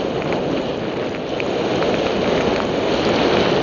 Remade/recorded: recorded